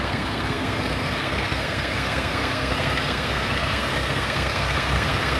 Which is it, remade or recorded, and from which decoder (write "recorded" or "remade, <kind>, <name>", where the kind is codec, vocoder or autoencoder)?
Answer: remade, codec, SNAC